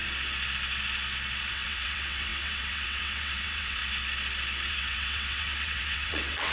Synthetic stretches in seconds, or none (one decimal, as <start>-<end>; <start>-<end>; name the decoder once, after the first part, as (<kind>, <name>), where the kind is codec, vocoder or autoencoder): 1.5-3.8 (vocoder, WaveNeXt); 4.7-6.5

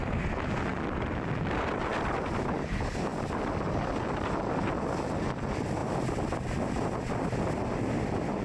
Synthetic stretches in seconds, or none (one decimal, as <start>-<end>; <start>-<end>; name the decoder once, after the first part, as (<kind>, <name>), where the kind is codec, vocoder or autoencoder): 3.1-4.4 (vocoder, BigVGAN v2)

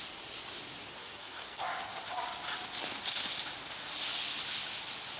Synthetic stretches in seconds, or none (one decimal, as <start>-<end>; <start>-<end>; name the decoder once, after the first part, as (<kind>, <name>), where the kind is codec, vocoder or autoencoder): 1.0-1.6 (codec, SNAC)